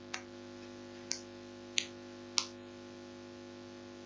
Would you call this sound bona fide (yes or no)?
yes